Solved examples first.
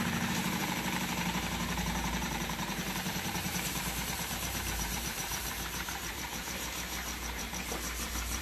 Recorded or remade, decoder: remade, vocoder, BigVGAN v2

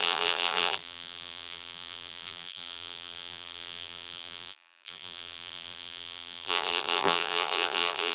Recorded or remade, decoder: remade, vocoder, BigVGAN v2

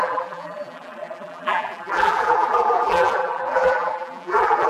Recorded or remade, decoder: remade, vocoder, BigVGAN v2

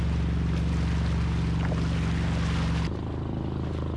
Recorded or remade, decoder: recorded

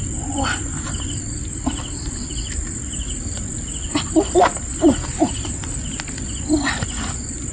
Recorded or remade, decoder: remade, vocoder, BigVGAN v2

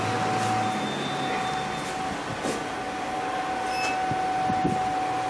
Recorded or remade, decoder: recorded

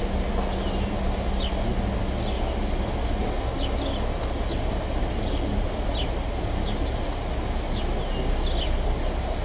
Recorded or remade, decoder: recorded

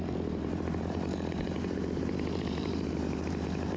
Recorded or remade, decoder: remade, vocoder, BigVGAN v2